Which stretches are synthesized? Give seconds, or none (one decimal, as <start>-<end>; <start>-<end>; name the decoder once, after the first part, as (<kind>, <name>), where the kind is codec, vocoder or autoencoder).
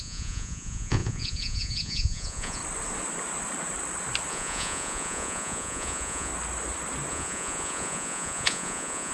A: 0.0-2.6 (vocoder, Vocos); 4.3-6.3; 7.1-9.1